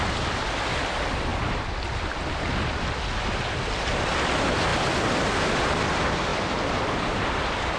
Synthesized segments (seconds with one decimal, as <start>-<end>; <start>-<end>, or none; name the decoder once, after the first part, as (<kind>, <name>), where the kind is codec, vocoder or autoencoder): 4.7-5.8 (vocoder, BigVGAN v2); 6.3-7.8